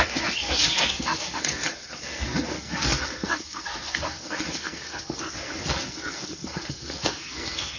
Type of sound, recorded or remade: remade